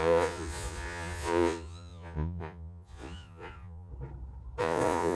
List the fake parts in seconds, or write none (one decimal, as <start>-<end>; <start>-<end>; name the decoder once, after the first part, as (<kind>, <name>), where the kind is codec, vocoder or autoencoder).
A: 0.0-3.9 (vocoder, Vocos); 4.6-5.2